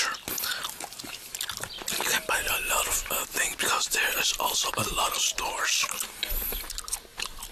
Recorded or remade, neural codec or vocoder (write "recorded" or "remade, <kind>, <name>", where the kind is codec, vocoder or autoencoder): recorded